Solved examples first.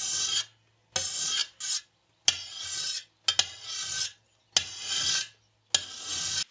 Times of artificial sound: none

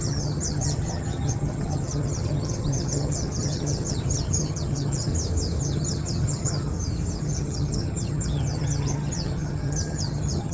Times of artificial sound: 0.0-5.1 (vocoder, HiFi-GAN); 5.6-6.7; 7.2-10.5

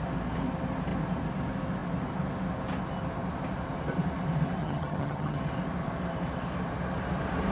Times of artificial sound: 4.6-5.4 (vocoder, HiFi-GAN)

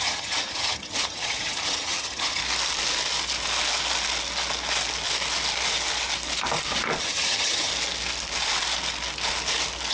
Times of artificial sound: 0.0-2.4 (vocoder, HiFi-GAN); 7.0-7.7

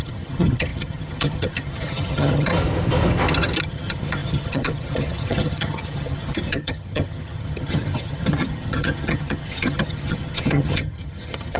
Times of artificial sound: 0.0-2.5 (vocoder, HiFi-GAN); 3.6-11.6